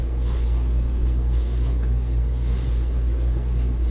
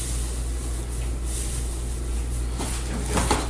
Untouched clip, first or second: second